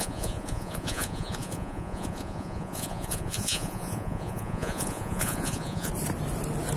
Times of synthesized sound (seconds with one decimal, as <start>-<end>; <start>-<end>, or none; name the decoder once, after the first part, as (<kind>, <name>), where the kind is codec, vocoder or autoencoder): 0.0-5.9 (vocoder, Vocos)